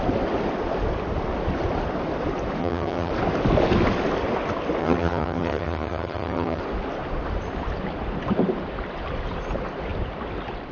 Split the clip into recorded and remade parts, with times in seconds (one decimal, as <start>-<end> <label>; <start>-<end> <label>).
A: 0.0-2.6 recorded; 2.6-3.1 remade; 3.1-4.8 recorded; 4.8-6.6 remade; 6.6-10.7 recorded